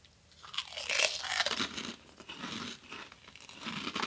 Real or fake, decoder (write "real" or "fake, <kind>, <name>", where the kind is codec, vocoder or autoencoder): real